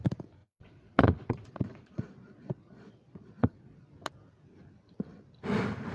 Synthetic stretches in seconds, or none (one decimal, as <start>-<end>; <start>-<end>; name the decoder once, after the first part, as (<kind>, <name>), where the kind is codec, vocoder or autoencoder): 0.4-3.9 (vocoder, Vocos)